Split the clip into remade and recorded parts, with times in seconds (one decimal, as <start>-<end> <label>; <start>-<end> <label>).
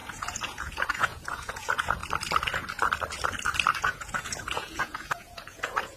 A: 0.0-2.0 remade; 2.0-3.8 recorded; 3.8-6.0 remade